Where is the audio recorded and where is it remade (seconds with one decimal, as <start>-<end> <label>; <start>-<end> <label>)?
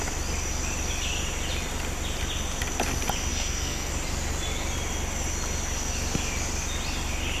0.0-3.3 recorded; 3.3-3.9 remade; 3.9-7.4 recorded